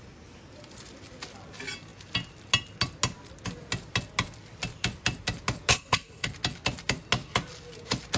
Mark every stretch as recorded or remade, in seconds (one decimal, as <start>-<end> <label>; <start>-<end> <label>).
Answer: 0.0-5.7 recorded; 5.7-6.3 remade; 6.3-8.2 recorded